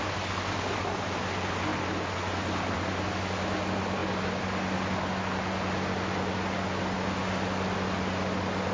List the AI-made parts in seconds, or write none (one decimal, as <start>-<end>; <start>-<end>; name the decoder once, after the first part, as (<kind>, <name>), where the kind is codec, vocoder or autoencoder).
none